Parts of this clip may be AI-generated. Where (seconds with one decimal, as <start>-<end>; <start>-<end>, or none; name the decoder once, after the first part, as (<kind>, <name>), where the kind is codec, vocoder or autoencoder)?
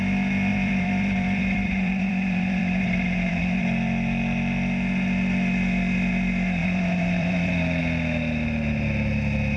0.5-3.3 (vocoder, BigVGAN v2); 6.6-7.8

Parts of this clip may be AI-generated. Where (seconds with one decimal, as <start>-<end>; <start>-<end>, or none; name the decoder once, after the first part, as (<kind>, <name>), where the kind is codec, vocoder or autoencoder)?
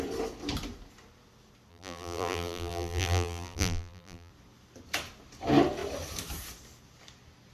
1.7-4.3 (vocoder, BigVGAN v2)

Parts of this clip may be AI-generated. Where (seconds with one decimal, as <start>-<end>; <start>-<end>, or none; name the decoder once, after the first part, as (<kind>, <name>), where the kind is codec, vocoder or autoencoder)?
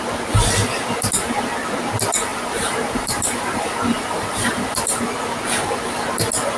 2.3-5.0 (vocoder, BigVGAN v2)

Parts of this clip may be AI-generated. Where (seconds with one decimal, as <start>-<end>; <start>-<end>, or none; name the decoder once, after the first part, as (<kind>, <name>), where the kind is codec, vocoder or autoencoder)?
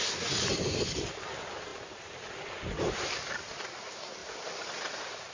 0.0-5.3 (vocoder, BigVGAN v2)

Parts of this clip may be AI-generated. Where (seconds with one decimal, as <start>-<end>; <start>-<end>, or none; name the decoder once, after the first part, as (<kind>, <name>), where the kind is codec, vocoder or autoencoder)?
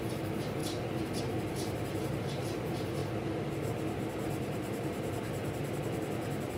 0.0-0.6 (vocoder, BigVGAN v2); 1.2-3.0; 4.1-5.4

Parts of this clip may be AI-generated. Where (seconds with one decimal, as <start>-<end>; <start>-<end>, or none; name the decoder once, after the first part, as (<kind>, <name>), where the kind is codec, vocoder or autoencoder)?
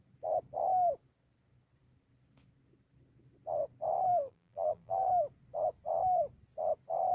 4.1-5.1 (vocoder, BigVGAN v2)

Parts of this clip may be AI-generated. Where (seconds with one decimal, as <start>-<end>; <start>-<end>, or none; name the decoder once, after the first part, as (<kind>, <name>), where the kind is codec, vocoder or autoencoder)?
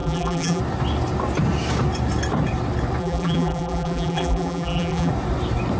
0.0-0.6 (vocoder, BigVGAN v2); 3.0-5.1